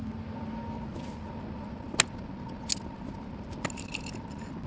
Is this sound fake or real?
real